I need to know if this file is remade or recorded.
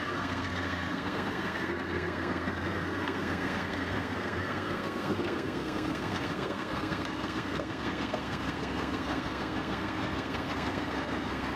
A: remade